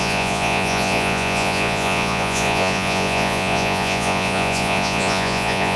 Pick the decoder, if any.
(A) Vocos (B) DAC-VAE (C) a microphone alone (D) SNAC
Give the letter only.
A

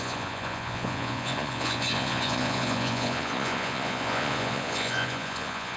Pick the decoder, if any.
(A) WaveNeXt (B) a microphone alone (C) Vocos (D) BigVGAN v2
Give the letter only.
C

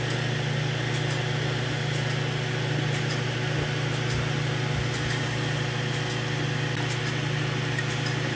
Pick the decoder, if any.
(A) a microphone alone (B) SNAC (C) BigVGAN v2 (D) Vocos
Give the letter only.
A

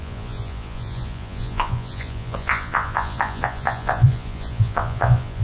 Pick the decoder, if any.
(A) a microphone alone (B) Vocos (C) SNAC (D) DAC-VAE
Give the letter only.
B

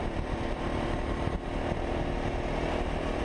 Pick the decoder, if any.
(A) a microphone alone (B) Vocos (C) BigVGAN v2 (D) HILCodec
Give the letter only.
A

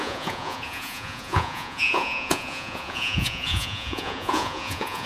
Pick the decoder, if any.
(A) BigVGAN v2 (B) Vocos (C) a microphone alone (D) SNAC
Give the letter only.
B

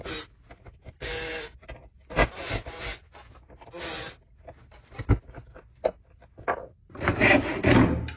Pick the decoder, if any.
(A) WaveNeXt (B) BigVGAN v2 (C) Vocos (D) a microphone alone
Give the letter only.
D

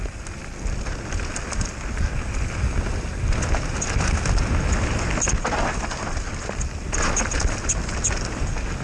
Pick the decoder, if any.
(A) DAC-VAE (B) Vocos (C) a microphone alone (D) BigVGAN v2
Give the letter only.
C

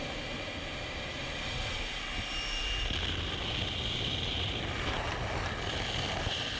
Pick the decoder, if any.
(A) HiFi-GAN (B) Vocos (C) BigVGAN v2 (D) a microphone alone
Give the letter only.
D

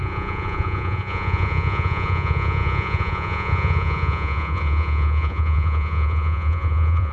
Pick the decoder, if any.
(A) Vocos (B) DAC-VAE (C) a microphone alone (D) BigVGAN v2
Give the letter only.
A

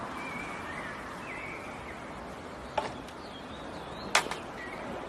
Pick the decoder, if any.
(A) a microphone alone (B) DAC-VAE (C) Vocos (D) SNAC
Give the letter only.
A